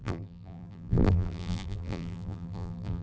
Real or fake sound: fake